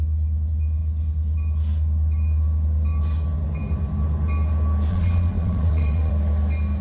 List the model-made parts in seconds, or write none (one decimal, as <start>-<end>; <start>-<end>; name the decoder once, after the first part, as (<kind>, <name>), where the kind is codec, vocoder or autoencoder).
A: 4.9-6.1 (vocoder, WaveNeXt)